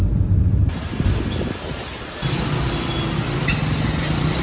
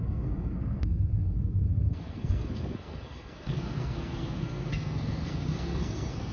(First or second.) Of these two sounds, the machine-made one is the second